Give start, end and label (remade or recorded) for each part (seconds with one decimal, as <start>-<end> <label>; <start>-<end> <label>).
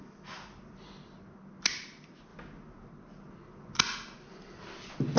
0.0-5.2 recorded